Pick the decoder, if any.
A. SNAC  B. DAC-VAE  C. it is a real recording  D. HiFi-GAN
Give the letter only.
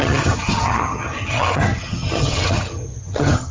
D